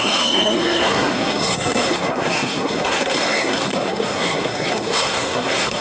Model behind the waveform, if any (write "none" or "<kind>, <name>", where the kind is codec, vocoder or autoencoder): codec, SNAC